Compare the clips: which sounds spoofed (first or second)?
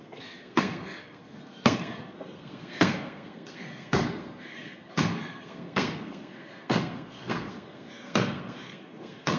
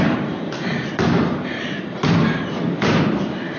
first